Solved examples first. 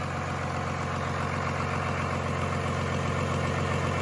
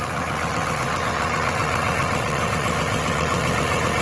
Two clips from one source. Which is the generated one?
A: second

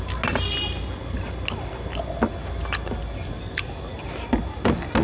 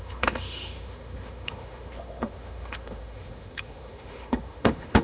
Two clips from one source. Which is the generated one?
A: second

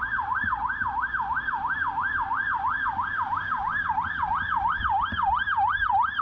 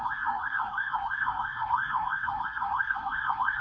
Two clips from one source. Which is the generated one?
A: second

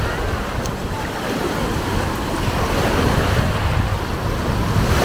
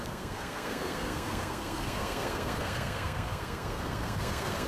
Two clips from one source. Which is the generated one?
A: second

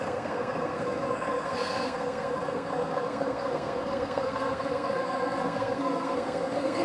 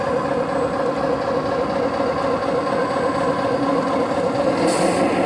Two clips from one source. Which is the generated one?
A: first